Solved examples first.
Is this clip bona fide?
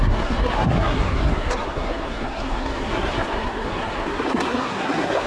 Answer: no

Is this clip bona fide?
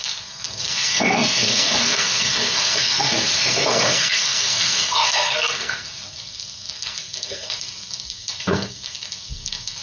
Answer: no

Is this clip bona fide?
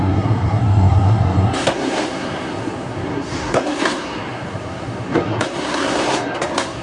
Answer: no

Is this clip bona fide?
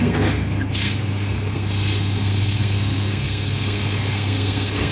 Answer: no